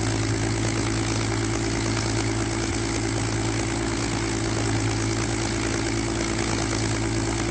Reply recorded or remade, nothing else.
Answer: recorded